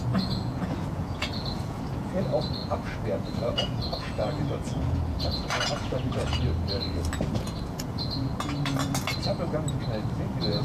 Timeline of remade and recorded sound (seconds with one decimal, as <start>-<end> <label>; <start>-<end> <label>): 0.0-6.2 remade; 6.2-7.3 recorded; 7.3-8.3 remade; 8.3-10.2 recorded; 10.2-10.6 remade

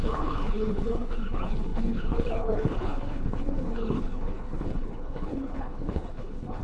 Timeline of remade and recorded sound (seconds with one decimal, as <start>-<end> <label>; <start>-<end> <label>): 0.0-6.6 remade

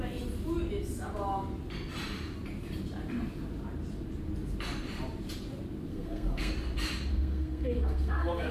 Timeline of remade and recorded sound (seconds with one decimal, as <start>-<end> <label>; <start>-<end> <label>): 0.0-5.9 recorded; 5.9-6.5 remade; 6.5-7.1 recorded; 7.1-8.5 remade

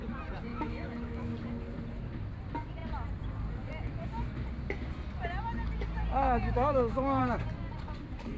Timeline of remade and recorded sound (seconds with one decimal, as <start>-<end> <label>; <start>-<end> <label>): 0.0-0.5 recorded; 0.5-1.3 remade; 1.3-6.4 recorded; 6.4-7.2 remade; 7.2-8.4 recorded

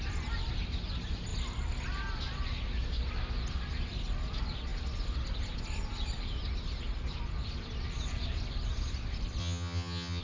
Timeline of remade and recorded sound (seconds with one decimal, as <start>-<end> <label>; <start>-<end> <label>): 0.0-9.4 recorded; 9.4-10.2 remade

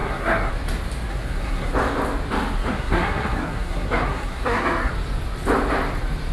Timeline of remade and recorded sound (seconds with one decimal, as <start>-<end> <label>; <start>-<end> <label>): 0.0-0.5 remade; 0.5-1.1 recorded; 1.1-1.7 remade; 1.7-2.6 recorded; 2.6-4.9 remade; 4.9-6.3 recorded